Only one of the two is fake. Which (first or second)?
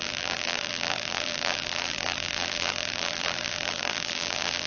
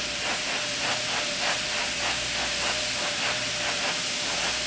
first